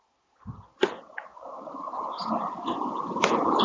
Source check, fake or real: real